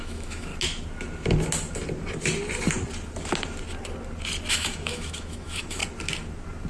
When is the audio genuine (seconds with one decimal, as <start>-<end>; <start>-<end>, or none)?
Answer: 0.5-4.5; 5.8-6.7